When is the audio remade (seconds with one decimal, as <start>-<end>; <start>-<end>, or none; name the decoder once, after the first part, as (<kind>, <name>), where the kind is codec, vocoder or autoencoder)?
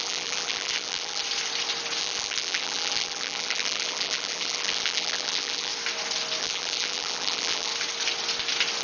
0.0-1.2 (vocoder, BigVGAN v2); 2.0-5.7; 6.4-7.7